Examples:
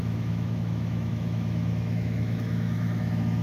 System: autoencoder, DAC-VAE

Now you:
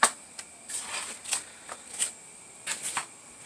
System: none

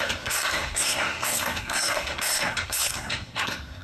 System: codec, SNAC